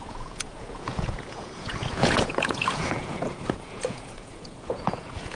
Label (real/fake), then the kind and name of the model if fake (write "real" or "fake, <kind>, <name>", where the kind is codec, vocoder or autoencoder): fake, vocoder, Vocos